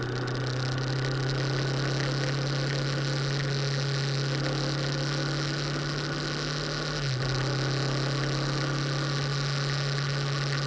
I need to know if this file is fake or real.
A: real